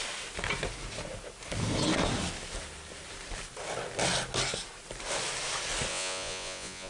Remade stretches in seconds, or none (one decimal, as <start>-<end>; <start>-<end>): 5.9-6.9